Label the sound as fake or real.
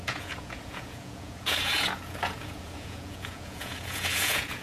fake